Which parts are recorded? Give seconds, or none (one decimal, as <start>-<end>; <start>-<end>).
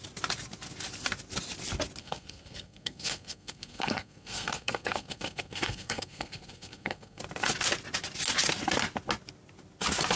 0.0-2.0; 7.2-10.2